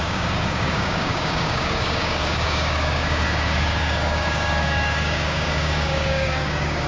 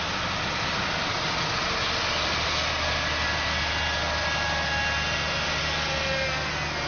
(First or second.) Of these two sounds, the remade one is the first